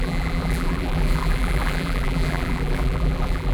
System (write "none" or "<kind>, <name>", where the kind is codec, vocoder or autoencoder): vocoder, BigVGAN v2